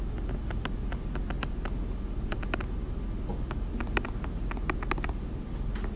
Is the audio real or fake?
real